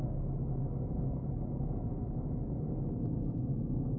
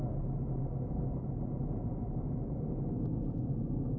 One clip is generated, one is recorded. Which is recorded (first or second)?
second